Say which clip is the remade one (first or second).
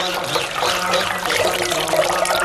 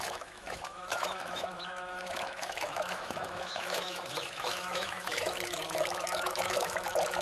second